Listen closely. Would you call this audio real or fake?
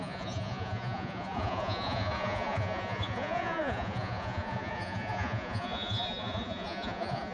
fake